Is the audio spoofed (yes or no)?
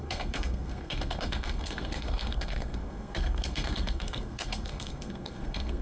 yes